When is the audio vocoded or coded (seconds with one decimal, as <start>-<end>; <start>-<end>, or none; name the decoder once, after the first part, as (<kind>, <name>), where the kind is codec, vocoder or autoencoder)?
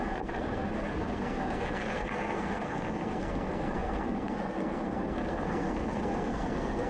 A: 0.0-6.9 (codec, SNAC)